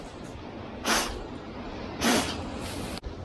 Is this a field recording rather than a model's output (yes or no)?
yes